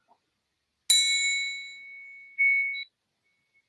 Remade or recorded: recorded